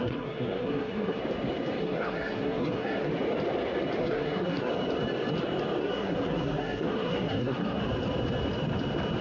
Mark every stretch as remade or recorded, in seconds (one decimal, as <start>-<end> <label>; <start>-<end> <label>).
0.0-1.2 remade; 1.2-1.8 recorded; 1.8-3.1 remade; 3.1-4.0 recorded; 4.0-4.7 remade; 4.7-5.8 recorded; 5.8-7.8 remade; 7.8-9.2 recorded